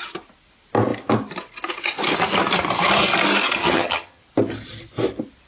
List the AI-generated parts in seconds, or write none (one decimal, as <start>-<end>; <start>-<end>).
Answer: 3.6-4.2